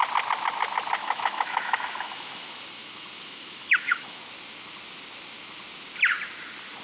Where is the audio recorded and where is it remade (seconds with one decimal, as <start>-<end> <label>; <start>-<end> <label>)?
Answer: 0.0-1.0 recorded; 1.0-4.2 remade; 4.2-6.8 recorded

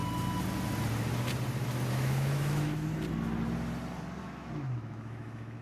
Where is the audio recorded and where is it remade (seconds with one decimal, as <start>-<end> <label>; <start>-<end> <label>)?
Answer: 0.0-1.9 recorded; 1.9-2.9 remade; 2.9-4.2 recorded; 4.2-5.6 remade